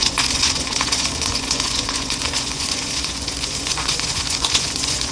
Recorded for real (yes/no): no